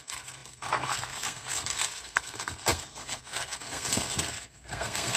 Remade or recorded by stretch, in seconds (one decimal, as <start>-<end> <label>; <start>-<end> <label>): 0.0-5.2 remade